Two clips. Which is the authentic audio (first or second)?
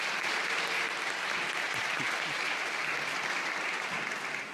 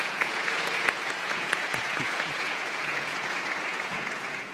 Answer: first